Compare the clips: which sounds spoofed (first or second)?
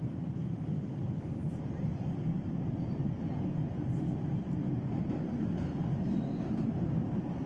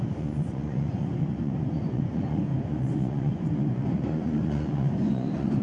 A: second